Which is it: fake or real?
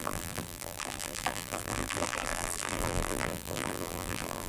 fake